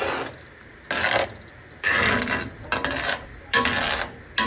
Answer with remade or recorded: recorded